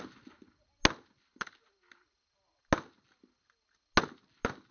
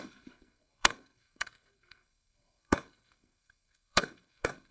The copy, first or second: second